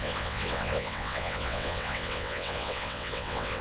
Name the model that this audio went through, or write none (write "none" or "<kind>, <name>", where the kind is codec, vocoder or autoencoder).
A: vocoder, WaveNeXt